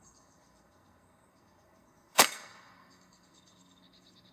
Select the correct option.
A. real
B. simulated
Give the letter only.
B